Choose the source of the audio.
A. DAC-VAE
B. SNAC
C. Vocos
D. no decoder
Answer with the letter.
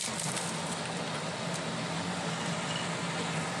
D